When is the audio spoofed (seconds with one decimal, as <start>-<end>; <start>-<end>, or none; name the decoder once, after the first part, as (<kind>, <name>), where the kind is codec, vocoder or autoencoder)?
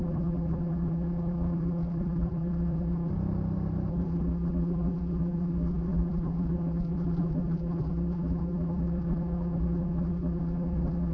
0.0-3.1 (vocoder, BigVGAN v2); 3.9-11.1